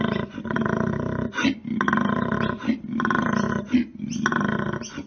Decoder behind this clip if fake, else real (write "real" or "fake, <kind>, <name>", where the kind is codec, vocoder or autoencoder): real